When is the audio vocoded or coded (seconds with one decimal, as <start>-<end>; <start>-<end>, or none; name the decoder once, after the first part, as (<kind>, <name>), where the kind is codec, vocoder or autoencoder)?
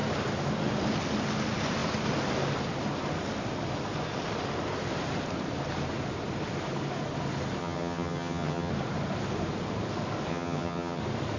7.6-8.7 (vocoder, HiFi-GAN); 10.3-11.0